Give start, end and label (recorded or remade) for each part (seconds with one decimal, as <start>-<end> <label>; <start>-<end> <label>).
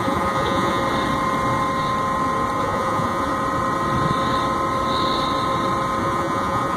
0.0-0.8 remade; 0.8-2.6 recorded; 2.6-3.3 remade; 3.3-6.0 recorded; 6.0-6.8 remade